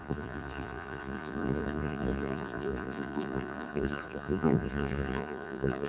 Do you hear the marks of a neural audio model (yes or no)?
yes